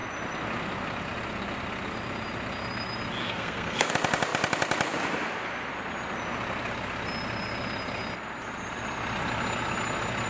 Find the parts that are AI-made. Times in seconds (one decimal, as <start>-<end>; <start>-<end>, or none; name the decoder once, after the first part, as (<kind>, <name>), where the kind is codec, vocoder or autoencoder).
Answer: 3.2-3.9 (codec, SNAC)